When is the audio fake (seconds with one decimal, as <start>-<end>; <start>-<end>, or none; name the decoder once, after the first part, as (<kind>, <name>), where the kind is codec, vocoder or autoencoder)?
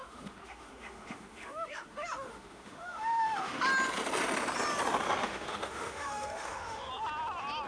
0.0-3.6 (autoencoder, DAC-VAE); 5.2-6.9